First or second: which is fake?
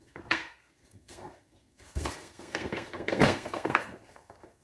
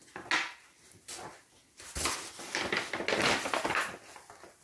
first